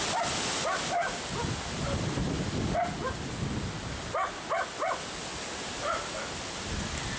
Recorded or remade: recorded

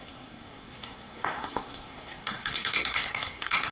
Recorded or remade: remade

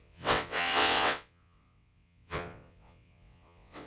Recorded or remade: remade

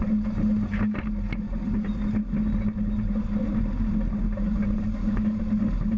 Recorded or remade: recorded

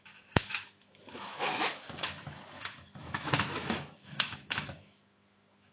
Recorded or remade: remade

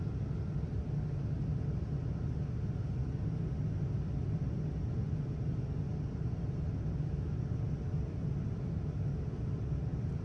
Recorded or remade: recorded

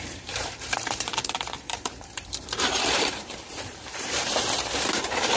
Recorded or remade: remade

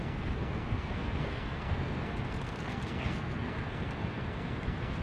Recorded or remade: remade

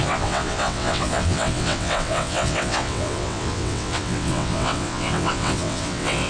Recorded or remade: remade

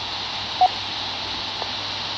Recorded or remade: recorded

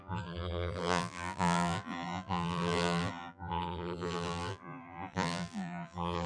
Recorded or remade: remade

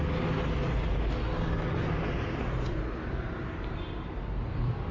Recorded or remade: recorded